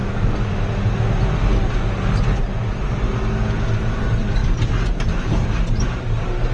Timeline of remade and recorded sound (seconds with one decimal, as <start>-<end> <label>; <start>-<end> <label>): 0.0-6.5 recorded